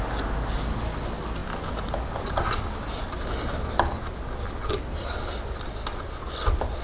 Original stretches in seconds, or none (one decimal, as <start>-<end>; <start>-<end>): 0.0-6.8